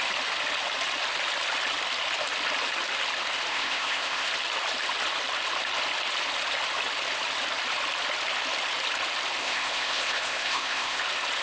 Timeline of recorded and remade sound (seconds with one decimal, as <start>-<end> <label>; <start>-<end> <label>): 0.0-3.5 recorded; 3.5-4.3 remade; 4.3-9.4 recorded; 9.4-11.0 remade; 11.0-11.4 recorded